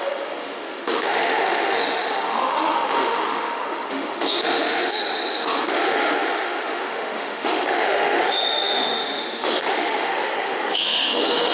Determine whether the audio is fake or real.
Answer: fake